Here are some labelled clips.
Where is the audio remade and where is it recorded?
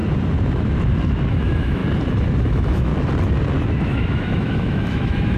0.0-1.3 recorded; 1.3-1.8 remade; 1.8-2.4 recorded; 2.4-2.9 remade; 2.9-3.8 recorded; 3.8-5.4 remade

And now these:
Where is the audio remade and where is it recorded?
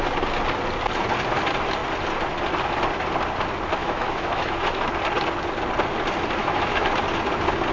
0.0-3.8 recorded; 3.8-4.9 remade; 4.9-6.4 recorded; 6.4-6.9 remade; 6.9-7.7 recorded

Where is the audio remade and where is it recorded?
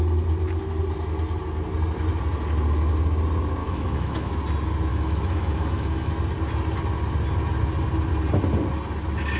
0.0-3.6 recorded; 3.6-4.3 remade; 4.3-4.9 recorded; 4.9-6.1 remade; 6.1-9.4 recorded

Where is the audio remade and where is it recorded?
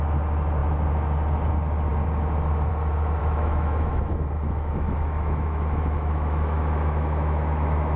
0.0-3.2 recorded; 3.2-8.0 remade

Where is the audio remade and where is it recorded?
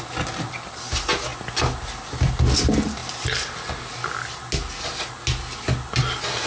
0.0-6.5 recorded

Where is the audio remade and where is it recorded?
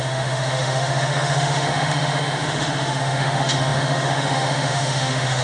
0.0-5.4 remade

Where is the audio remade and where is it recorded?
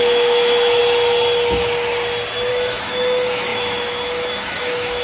0.0-0.8 remade; 0.8-2.5 recorded; 2.5-5.0 remade